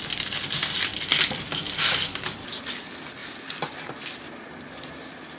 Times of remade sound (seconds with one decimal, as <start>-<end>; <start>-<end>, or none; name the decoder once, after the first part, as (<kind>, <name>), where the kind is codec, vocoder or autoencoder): 0.9-2.5 (vocoder, BigVGAN v2); 3.2-4.5